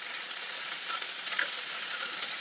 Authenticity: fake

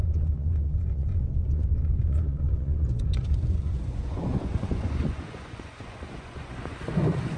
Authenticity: fake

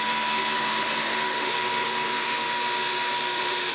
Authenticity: fake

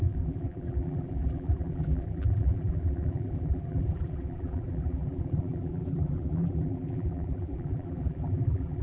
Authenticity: fake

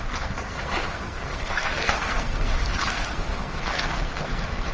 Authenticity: fake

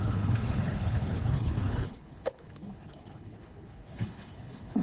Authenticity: fake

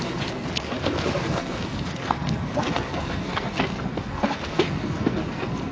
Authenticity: fake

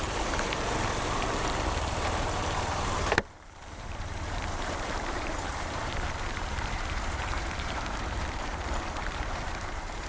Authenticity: fake